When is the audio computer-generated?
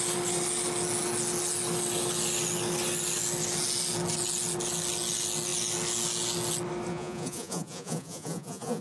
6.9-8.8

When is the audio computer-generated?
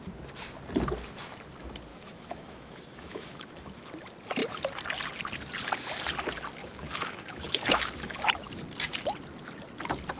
1.9-3.9; 6.6-8.3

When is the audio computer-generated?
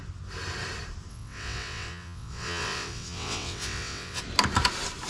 1.1-4.2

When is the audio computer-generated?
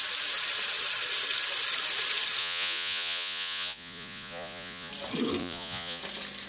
2.4-4.9; 5.4-6.0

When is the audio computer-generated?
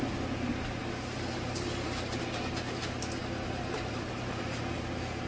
0.8-2.5; 3.2-4.6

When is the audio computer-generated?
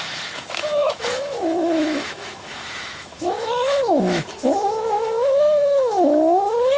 0.0-6.8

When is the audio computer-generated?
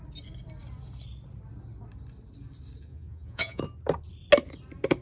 2.9-3.6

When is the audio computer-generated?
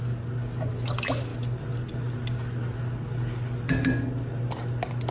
none